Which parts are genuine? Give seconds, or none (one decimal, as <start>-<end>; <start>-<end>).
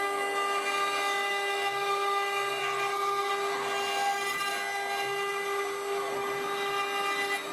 0.0-2.6; 3.3-7.5